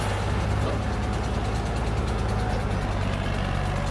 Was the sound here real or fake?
real